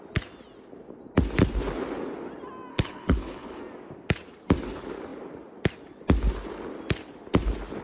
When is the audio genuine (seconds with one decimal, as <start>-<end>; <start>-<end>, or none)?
0.0-2.7; 3.6-7.8